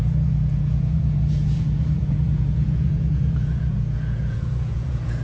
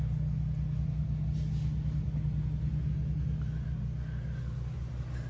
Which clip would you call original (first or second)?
second